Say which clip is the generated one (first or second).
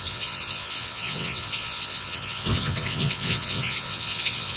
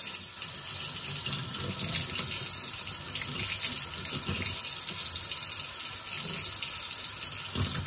first